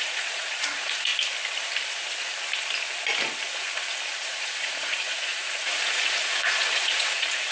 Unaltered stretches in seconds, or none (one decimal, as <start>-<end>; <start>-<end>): 1.1-4.2